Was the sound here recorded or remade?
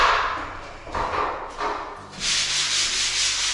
recorded